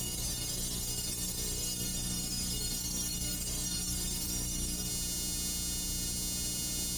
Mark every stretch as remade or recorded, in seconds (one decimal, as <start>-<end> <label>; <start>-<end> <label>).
0.0-4.9 remade; 4.9-7.0 recorded